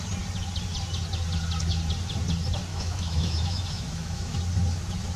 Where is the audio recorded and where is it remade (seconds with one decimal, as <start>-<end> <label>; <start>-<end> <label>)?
0.0-2.7 recorded; 2.7-4.4 remade; 4.4-5.2 recorded